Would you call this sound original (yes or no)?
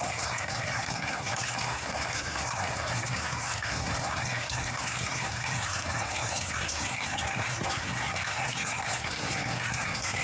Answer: no